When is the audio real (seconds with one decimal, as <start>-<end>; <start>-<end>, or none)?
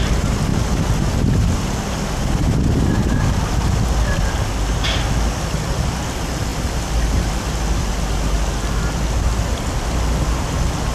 0.0-10.9